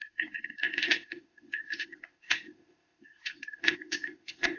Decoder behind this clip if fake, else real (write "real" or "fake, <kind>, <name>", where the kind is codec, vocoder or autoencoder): fake, codec, ZipCodec